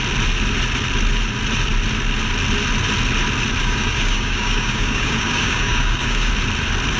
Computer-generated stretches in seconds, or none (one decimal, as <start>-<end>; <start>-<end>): 3.6-6.3